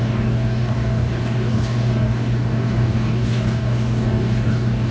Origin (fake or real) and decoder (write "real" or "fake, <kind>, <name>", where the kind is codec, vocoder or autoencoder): fake, codec, DAC